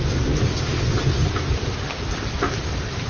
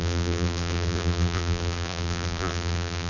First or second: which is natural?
first